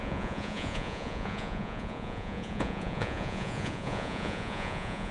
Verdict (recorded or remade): remade